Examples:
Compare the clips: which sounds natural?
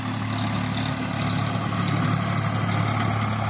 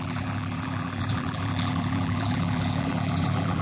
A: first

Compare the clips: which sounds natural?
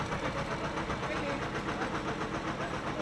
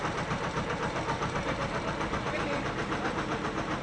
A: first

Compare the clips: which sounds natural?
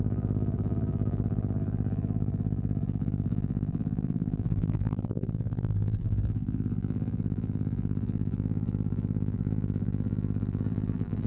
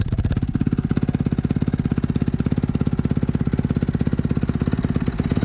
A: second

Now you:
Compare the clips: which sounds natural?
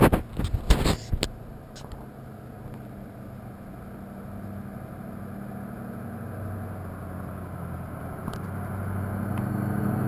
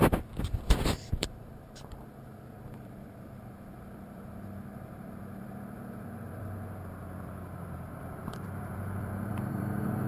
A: first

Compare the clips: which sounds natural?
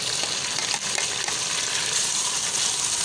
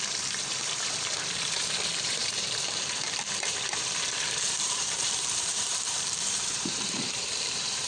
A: first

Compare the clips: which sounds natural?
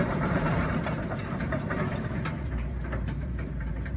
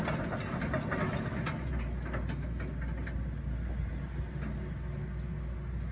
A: second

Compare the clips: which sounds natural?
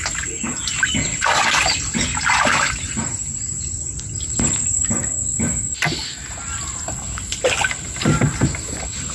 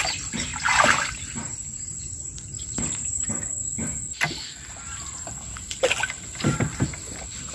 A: first